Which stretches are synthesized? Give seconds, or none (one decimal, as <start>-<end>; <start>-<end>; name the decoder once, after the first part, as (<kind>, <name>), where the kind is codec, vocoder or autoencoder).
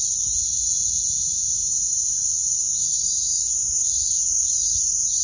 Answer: none